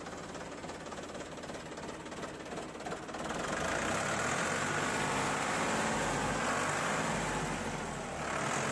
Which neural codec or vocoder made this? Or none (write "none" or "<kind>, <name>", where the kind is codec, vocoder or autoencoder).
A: none